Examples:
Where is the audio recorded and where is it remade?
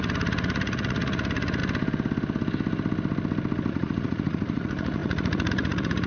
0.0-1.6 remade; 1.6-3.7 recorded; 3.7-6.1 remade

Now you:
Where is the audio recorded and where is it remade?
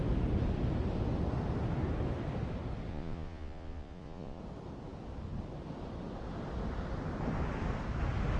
0.0-2.9 recorded; 2.9-4.4 remade; 4.4-8.4 recorded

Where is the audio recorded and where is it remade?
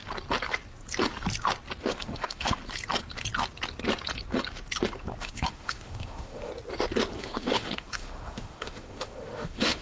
0.0-1.8 recorded; 1.8-2.6 remade; 2.6-5.2 recorded; 5.2-6.5 remade; 6.5-7.2 recorded; 7.2-9.8 remade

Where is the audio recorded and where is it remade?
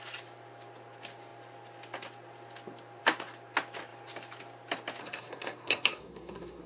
0.0-5.0 recorded; 5.0-6.7 remade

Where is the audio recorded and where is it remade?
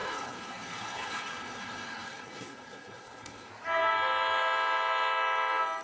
0.0-3.5 remade; 3.5-5.8 recorded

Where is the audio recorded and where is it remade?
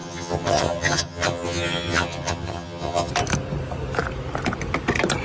0.0-3.1 remade; 3.1-5.2 recorded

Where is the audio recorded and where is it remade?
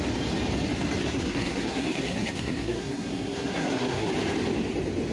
0.0-1.0 recorded; 1.0-4.1 remade; 4.1-5.1 recorded